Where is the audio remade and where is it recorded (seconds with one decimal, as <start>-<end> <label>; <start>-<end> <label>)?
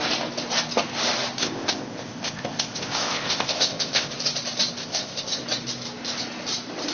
0.0-1.4 recorded; 1.4-4.1 remade; 4.1-4.8 recorded; 4.8-5.4 remade; 5.4-6.9 recorded